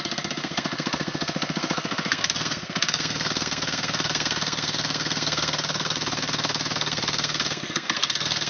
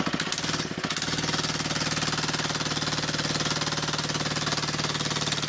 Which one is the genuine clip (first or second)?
second